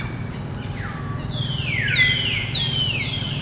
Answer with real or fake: real